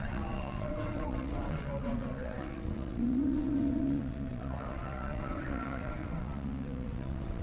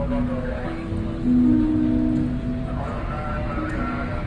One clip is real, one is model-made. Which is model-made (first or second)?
first